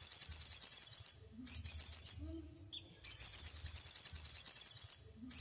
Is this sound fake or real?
real